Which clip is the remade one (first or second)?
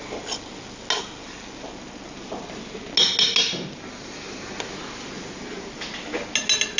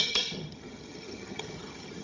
second